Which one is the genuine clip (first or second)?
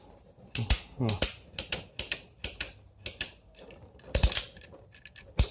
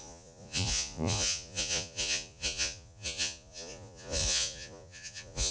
first